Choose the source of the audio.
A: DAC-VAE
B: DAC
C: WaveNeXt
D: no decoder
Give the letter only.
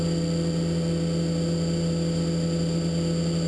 D